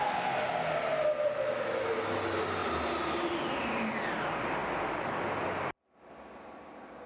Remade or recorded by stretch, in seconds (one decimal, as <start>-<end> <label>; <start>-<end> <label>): 0.0-7.1 recorded